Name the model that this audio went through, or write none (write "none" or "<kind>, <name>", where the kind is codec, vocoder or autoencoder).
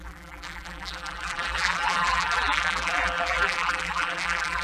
vocoder, BigVGAN v2